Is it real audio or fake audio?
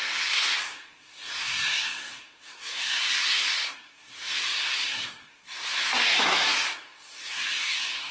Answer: fake